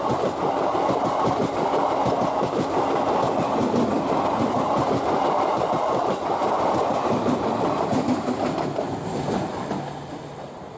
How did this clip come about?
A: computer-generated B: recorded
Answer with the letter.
B